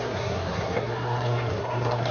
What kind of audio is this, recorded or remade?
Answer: remade